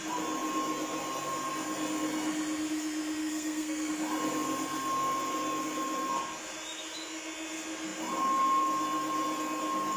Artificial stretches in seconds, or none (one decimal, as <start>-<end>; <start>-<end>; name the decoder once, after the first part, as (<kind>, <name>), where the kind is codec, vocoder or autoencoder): 3.2-3.9 (codec, SNAC)